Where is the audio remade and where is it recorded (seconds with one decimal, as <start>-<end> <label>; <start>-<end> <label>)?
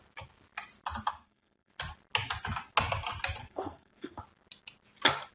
0.0-1.1 recorded; 1.1-1.7 remade; 1.7-3.4 recorded; 3.4-4.2 remade; 4.2-5.3 recorded